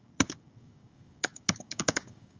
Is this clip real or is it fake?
fake